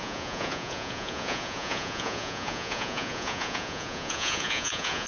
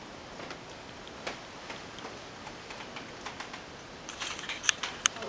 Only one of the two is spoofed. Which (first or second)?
first